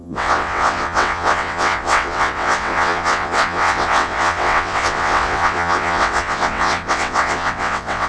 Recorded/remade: remade